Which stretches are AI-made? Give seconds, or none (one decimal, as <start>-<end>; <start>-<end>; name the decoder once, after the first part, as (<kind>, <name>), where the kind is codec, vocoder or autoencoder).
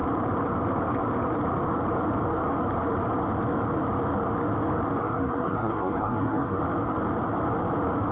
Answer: 5.0-6.6 (codec, SNAC)